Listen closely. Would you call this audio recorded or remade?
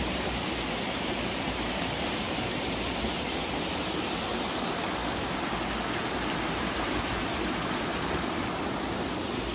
recorded